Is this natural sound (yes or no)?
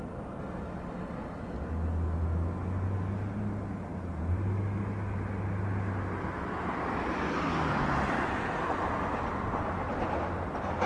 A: yes